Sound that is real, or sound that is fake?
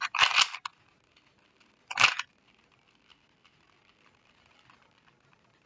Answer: real